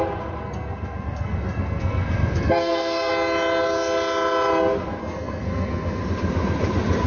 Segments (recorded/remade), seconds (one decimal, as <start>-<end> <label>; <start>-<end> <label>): 0.0-0.4 recorded; 0.4-3.1 remade; 3.1-5.0 recorded; 5.0-6.0 remade; 6.0-7.1 recorded